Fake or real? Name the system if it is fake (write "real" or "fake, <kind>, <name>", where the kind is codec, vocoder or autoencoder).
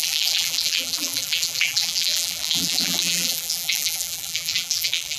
fake, vocoder, BigVGAN v2